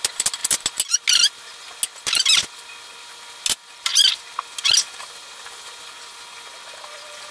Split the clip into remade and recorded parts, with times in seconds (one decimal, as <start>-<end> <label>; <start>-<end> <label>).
0.0-7.3 recorded